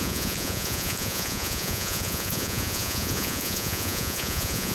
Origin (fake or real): fake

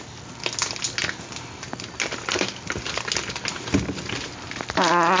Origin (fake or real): real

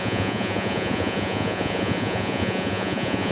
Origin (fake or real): fake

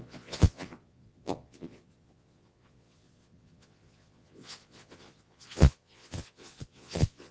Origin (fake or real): fake